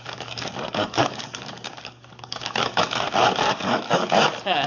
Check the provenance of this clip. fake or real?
fake